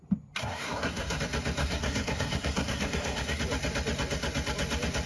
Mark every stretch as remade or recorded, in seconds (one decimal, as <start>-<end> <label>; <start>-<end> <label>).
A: 0.0-0.4 recorded; 0.4-1.2 remade; 1.2-1.6 recorded; 1.6-3.4 remade; 3.4-5.1 recorded